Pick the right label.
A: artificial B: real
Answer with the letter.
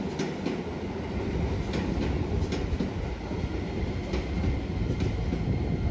B